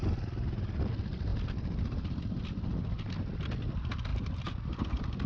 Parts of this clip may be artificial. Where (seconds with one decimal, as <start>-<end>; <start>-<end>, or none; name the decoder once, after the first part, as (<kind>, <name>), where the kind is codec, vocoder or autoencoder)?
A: 1.3-2.3 (vocoder, BigVGAN v2); 4.1-5.3